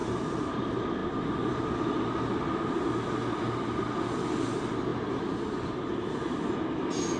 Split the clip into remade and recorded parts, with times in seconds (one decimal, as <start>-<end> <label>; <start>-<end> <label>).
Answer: 0.0-0.6 remade; 0.6-4.9 recorded; 4.9-6.1 remade; 6.1-7.2 recorded